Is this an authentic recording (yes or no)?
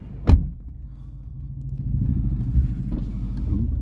yes